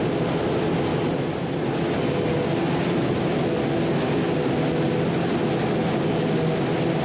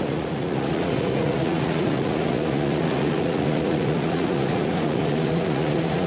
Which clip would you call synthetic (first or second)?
second